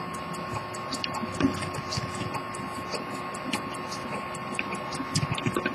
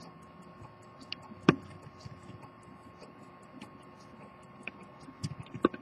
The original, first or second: first